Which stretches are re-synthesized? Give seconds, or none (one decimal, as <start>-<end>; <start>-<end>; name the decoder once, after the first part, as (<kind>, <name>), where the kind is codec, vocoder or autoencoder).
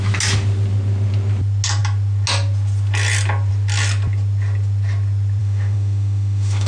5.4-6.7 (autoencoder, DAC-VAE)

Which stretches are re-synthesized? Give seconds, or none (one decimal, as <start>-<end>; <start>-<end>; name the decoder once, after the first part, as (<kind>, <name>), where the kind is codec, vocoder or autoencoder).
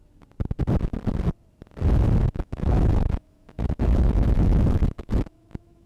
2.2-5.9 (autoencoder, DAC-VAE)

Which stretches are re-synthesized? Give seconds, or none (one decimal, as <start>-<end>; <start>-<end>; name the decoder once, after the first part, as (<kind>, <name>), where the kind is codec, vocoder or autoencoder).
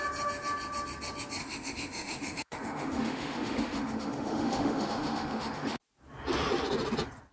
1.4-5.8 (autoencoder, DAC-VAE)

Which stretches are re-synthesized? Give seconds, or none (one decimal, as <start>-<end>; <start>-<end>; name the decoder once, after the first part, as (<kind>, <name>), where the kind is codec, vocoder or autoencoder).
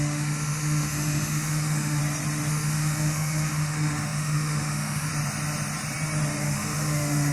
0.0-2.0 (autoencoder, DAC-VAE); 2.5-5.1; 6.4-7.3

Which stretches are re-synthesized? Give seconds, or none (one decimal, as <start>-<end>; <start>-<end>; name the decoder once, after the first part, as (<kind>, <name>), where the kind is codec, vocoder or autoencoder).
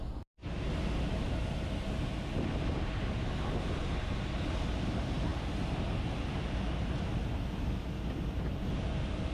none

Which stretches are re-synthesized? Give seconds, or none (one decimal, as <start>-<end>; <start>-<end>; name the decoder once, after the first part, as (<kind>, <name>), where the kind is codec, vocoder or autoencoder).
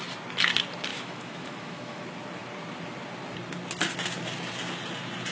0.9-2.0 (autoencoder, DAC-VAE)